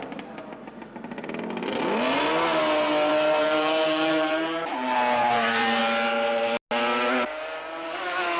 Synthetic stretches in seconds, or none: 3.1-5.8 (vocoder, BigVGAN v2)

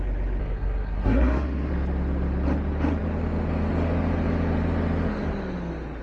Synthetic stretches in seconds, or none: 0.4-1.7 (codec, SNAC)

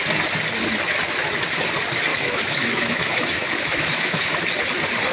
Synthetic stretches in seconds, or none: 2.1-4.4 (autoencoder, DAC-VAE)

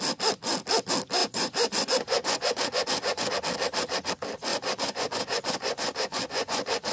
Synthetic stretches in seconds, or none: 1.2-3.3 (vocoder, Vocos); 4.5-6.9

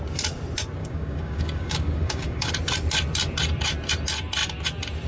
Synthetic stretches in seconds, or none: 0.8-2.5 (codec, DAC)